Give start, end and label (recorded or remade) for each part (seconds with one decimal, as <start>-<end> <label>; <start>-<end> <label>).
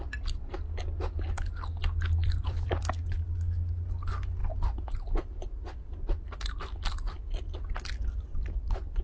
0.0-2.2 recorded; 2.2-2.8 remade; 2.8-9.0 recorded